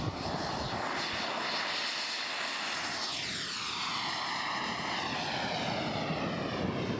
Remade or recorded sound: recorded